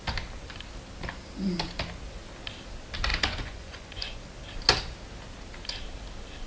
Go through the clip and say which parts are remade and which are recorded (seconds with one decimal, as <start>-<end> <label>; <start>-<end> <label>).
0.0-3.1 recorded; 3.1-4.2 remade; 4.2-6.5 recorded